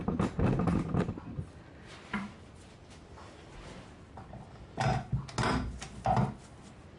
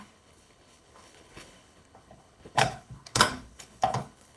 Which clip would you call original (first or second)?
first